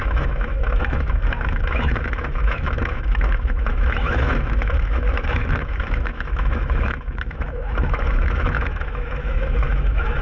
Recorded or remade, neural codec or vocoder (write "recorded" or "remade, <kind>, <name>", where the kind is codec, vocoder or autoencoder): remade, autoencoder, DAC-VAE